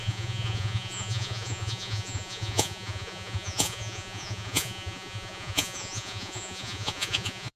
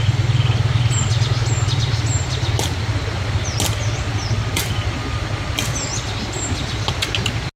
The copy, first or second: first